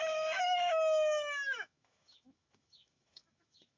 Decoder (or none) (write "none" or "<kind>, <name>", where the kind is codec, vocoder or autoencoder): autoencoder, DAC-VAE